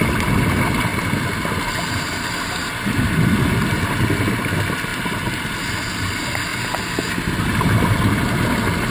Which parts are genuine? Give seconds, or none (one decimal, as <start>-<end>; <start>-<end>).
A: 0.0-4.9; 5.9-8.9